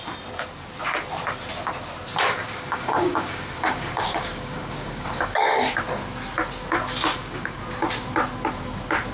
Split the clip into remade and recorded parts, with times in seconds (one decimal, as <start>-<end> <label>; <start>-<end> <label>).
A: 0.0-2.4 recorded; 2.4-5.7 remade; 5.7-7.1 recorded; 7.1-7.6 remade; 7.6-9.1 recorded